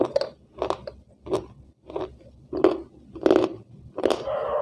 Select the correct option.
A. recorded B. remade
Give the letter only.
A